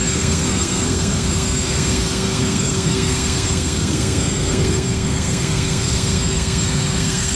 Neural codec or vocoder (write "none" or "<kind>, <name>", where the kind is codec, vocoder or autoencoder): codec, SNAC